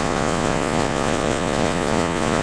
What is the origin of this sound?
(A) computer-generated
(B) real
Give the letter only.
A